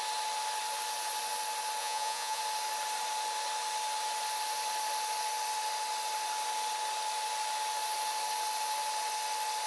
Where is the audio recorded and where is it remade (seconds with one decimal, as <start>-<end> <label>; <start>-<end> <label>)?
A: 0.0-1.8 recorded; 1.8-2.4 remade; 2.4-9.7 recorded